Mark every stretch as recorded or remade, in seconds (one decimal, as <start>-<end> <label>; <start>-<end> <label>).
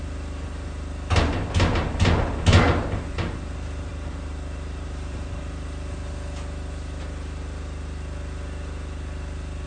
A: 0.0-3.9 recorded; 3.9-5.4 remade; 5.4-9.7 recorded